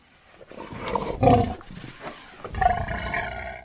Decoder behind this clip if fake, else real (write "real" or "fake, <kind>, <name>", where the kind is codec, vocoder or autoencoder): real